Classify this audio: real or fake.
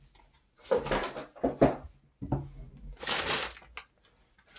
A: real